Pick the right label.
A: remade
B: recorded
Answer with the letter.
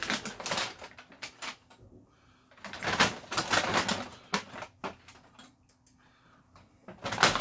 B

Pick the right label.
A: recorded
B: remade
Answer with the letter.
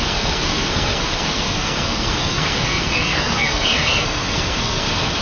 B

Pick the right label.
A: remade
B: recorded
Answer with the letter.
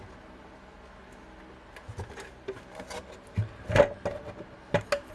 B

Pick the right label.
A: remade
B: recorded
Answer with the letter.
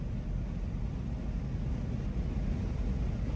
B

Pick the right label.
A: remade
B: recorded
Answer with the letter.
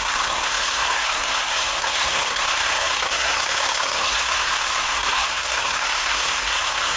A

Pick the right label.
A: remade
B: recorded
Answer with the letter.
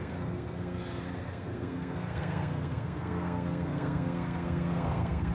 A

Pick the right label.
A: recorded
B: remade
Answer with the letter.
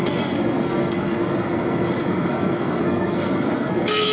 B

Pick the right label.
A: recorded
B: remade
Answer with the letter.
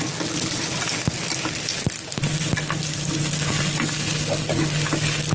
A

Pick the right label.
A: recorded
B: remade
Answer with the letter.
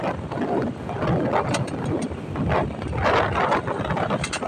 A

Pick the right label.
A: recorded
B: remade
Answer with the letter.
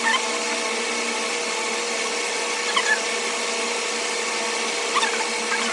A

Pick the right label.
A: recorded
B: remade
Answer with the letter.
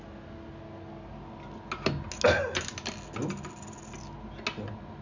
A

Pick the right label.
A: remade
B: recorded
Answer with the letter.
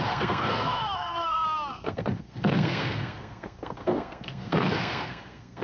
A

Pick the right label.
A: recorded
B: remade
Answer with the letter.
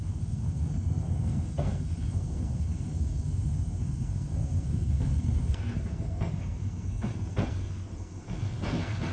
B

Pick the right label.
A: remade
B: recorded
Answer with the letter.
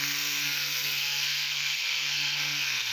A